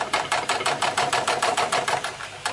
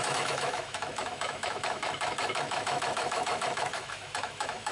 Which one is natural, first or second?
first